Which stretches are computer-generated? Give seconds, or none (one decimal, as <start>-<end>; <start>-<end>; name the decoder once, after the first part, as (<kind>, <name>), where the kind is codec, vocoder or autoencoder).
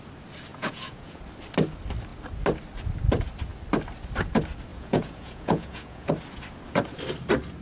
0.5-1.2 (vocoder, Vocos); 4.7-6.1